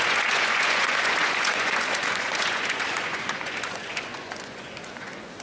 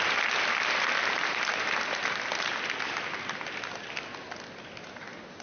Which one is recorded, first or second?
second